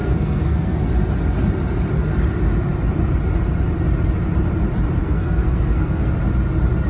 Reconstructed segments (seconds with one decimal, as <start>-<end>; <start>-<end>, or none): 0.0-0.9; 5.0-6.1